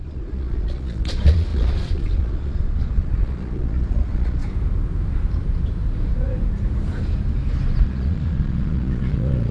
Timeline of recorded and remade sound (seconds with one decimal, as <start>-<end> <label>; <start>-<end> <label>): 0.0-4.4 remade; 4.4-7.8 recorded; 7.8-9.5 remade